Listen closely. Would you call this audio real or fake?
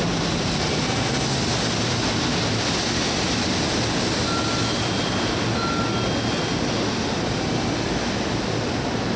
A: real